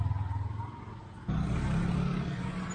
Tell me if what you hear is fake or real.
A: real